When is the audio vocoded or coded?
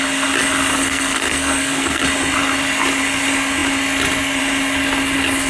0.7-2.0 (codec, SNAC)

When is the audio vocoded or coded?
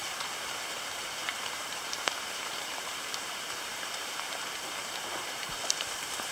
0.0-6.3 (vocoder, BigVGAN v2)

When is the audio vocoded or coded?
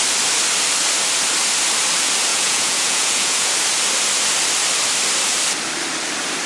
2.3-3.5 (vocoder, Vocos)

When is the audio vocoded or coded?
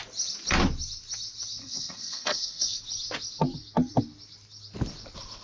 1.6-2.8 (codec, SNAC)